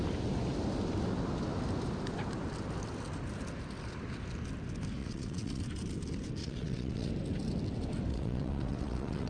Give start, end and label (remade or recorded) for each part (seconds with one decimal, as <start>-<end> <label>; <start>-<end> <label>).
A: 0.0-5.0 recorded; 5.0-5.6 remade; 5.6-6.4 recorded; 6.4-7.1 remade; 7.1-8.1 recorded; 8.1-9.3 remade